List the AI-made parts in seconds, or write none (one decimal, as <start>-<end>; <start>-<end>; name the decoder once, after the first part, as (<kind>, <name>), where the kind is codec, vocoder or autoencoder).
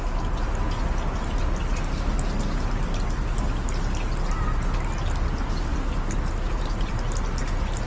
none